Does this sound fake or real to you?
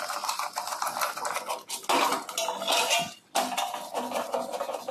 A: real